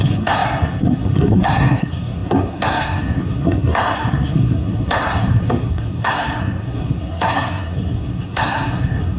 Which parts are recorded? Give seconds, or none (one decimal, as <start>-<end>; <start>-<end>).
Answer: none